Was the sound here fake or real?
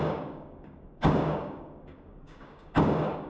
fake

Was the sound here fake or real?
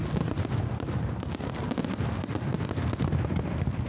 real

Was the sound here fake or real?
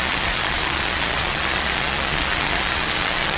fake